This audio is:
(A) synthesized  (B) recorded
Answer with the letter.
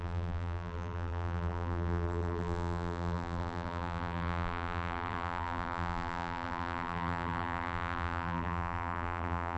A